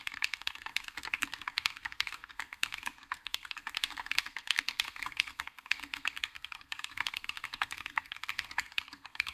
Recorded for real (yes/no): no